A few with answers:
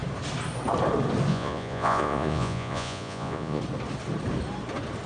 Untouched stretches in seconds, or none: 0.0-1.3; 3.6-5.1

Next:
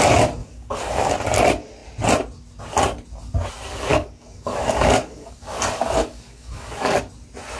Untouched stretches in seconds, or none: 0.0-0.4; 1.1-3.9; 7.0-7.6

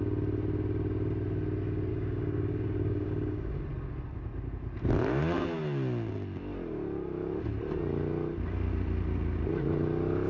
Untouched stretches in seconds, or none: 0.0-1.9; 3.6-10.3